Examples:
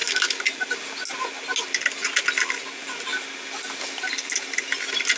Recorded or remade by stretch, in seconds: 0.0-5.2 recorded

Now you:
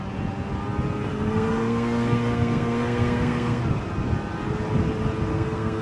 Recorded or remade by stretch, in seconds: 0.0-1.1 recorded; 1.1-3.6 remade; 3.6-5.3 recorded; 5.3-5.8 remade

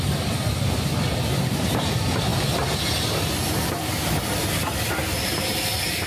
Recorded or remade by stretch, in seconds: 0.0-6.1 recorded

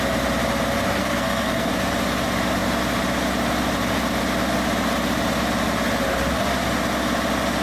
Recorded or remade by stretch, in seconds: 0.0-1.0 recorded; 1.0-1.7 remade; 1.7-7.6 recorded